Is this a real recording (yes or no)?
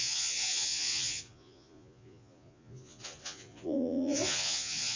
no